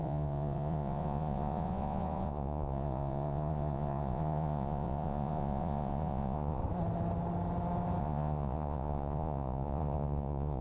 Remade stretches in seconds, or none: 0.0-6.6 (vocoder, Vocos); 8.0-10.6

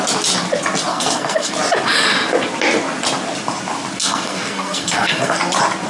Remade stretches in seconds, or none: 0.9-1.5 (codec, SNAC); 4.0-5.4

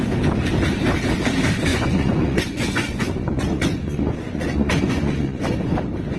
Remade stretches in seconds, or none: 1.7-5.4 (vocoder, Vocos)

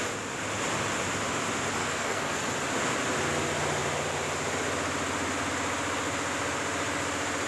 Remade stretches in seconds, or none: 1.8-2.4 (codec, SNAC)

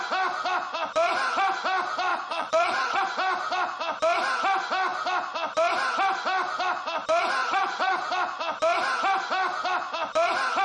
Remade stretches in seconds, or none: 2.1-3.0 (vocoder, Vocos); 7.4-8.1

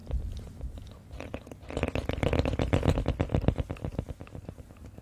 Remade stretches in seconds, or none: none

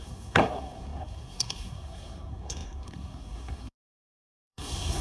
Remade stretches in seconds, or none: 0.0-5.0 (codec, SNAC)

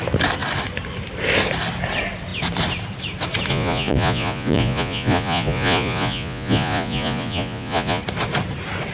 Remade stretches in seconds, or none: 3.5-8.0 (vocoder, Vocos)